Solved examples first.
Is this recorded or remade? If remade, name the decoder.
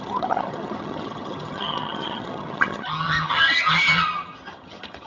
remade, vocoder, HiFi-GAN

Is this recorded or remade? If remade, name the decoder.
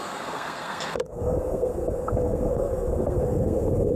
remade, codec, SNAC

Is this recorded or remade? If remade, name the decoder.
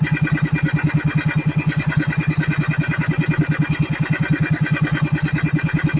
recorded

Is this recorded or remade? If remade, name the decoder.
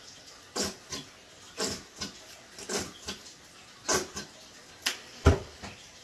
recorded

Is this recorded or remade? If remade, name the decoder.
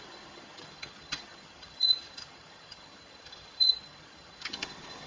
remade, vocoder, HiFi-GAN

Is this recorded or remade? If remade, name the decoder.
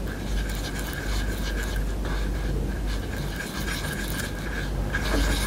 recorded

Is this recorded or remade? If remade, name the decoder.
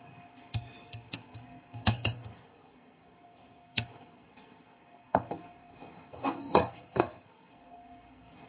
remade, codec, SNAC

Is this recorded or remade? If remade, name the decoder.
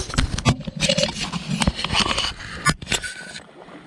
recorded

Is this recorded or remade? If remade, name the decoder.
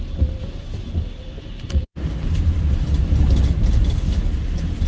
recorded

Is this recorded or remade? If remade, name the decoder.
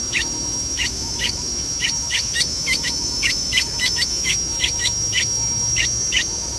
remade, autoencoder, DAC-VAE